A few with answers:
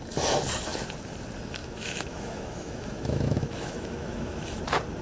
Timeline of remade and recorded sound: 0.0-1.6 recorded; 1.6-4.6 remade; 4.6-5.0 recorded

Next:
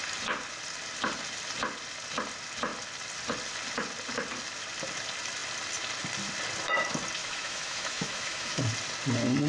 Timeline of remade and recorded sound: 0.0-7.2 recorded; 7.2-8.6 remade; 8.6-9.5 recorded

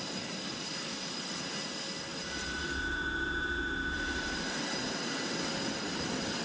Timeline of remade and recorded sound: 0.0-6.4 recorded

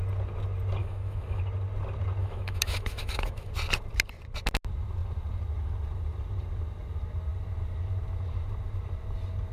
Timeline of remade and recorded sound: 0.0-0.8 recorded; 0.8-1.4 remade; 1.4-2.2 recorded; 2.2-3.5 remade; 3.5-9.5 recorded

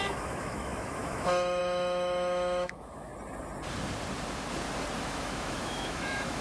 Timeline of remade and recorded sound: 0.0-3.1 remade; 3.1-5.0 recorded; 5.0-6.4 remade

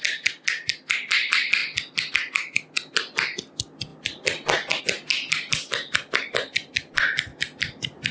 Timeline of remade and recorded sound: 0.0-8.1 recorded